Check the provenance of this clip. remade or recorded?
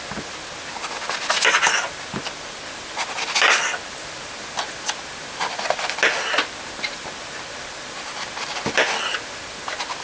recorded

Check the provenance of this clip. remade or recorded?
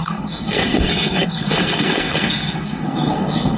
remade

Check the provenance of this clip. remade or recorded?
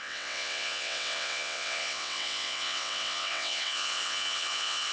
remade